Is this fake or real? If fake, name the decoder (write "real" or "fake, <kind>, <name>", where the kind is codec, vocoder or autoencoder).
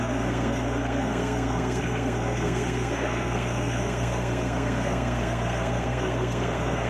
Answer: fake, codec, SNAC